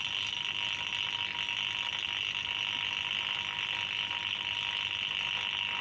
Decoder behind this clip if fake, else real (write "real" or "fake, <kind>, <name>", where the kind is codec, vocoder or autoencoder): real